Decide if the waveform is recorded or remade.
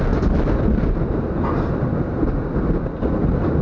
recorded